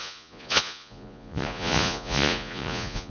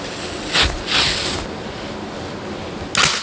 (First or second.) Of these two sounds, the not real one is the first